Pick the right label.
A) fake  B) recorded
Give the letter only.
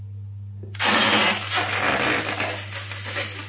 B